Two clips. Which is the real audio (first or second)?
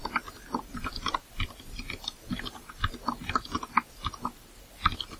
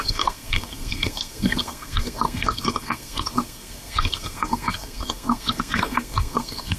first